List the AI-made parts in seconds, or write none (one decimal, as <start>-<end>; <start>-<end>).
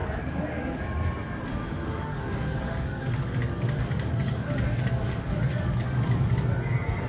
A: 0.0-0.8; 2.1-6.3